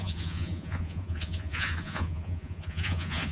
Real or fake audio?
fake